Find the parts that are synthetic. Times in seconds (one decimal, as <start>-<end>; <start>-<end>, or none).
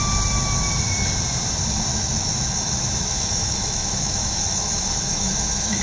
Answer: 1.9-5.8